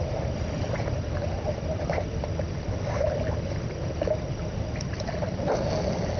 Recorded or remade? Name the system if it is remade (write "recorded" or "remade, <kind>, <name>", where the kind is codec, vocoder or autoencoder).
recorded